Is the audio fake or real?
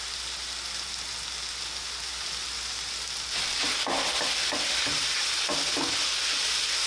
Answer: real